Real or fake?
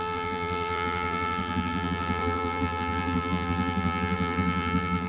fake